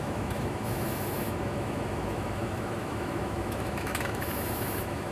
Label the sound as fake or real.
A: fake